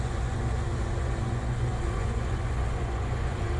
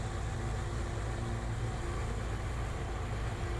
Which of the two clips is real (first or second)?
second